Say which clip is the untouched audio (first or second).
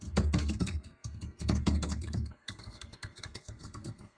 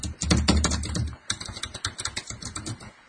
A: second